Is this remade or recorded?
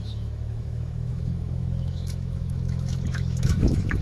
remade